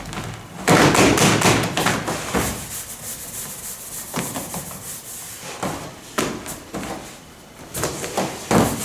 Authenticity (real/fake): real